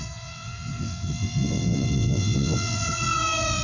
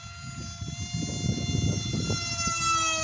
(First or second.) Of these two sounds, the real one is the second